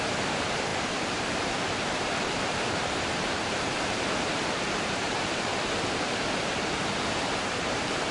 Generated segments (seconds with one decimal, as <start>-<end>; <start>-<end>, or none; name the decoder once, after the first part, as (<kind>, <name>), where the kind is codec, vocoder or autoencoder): 0.0-5.5 (vocoder, BigVGAN v2); 7.4-8.1